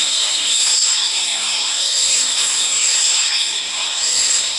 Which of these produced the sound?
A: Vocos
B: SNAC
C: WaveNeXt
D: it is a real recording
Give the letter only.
B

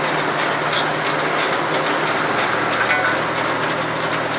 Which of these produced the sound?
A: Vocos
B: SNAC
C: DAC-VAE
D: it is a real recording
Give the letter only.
D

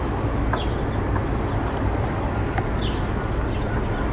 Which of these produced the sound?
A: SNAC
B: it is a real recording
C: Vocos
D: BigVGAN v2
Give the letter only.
B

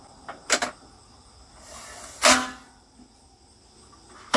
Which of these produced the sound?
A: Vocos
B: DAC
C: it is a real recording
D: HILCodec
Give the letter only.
C